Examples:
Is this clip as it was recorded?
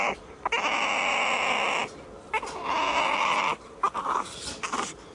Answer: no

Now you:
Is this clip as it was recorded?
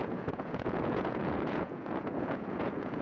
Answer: no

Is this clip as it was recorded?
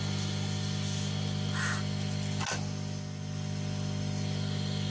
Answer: yes